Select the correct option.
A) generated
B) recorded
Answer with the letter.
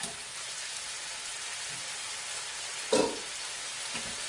B